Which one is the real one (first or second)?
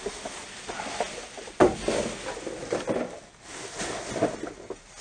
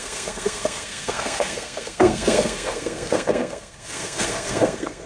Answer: first